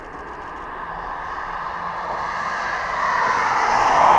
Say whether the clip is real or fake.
real